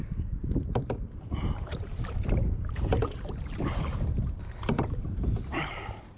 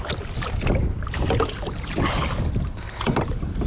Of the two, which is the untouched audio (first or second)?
second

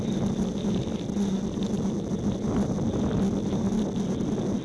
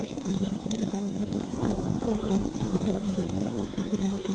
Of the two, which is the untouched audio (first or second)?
first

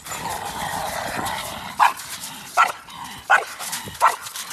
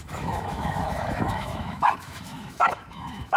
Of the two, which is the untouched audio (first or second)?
first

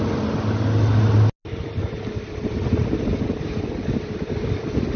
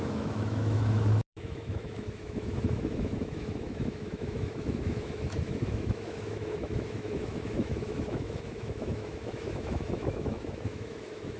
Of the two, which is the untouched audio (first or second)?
first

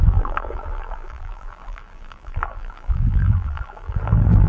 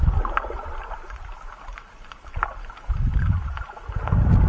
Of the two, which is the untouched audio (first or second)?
second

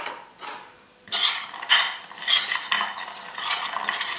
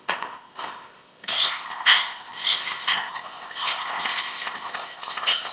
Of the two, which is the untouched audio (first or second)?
first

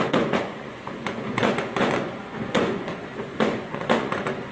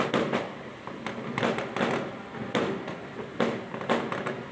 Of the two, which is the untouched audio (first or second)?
second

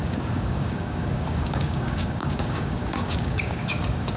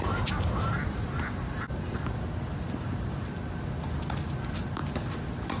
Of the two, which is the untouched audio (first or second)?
second